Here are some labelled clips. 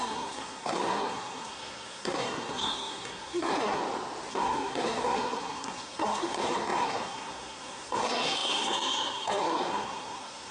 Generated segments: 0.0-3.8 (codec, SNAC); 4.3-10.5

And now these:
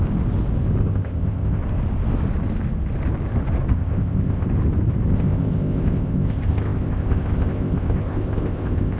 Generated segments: 0.8-1.6 (codec, ZipCodec); 3.7-4.5; 5.1-9.0

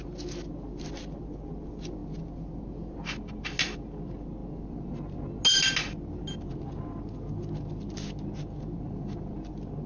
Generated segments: none

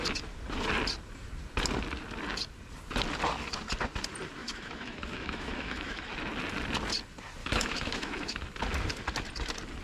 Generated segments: 4.4-6.1 (autoencoder, DAC-VAE); 7.4-8.4

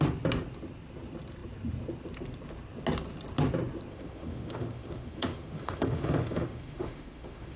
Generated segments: 3.9-7.6 (autoencoder, DAC-VAE)

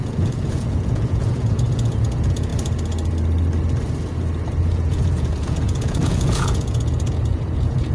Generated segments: 0.0-2.5 (vocoder, Vocos); 4.6-7.9

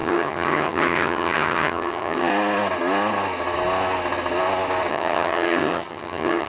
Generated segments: 0.0-2.3 (vocoder, HiFi-GAN); 4.9-6.5